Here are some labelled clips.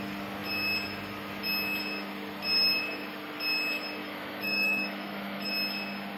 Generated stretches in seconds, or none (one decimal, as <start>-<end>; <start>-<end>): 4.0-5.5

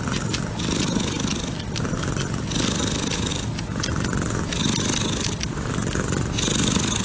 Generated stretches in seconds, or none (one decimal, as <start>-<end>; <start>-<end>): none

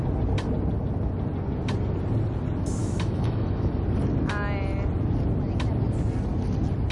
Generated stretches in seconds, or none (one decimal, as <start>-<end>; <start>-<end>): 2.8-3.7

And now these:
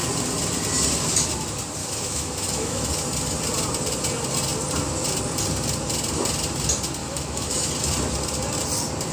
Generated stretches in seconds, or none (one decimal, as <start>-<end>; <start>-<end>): 1.8-2.9; 7.0-7.7

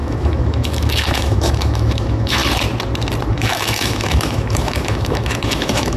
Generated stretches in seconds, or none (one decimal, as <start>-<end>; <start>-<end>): 0.0-2.4; 3.3-6.0

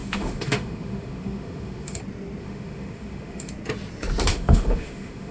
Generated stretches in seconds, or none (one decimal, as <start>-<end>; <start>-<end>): 0.0-2.0; 2.4-3.5; 4.3-5.3

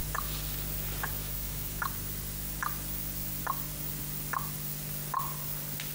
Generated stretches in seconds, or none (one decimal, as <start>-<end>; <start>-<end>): 1.2-1.8